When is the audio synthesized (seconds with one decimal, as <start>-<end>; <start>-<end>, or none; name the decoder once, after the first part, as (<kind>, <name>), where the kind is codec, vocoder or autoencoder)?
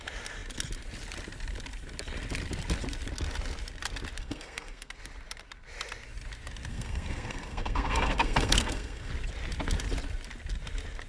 4.2-4.9 (codec, SNAC); 6.7-9.1